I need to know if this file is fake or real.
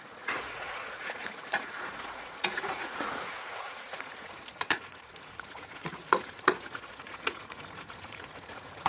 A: fake